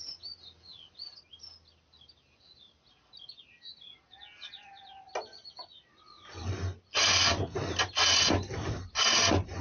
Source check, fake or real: real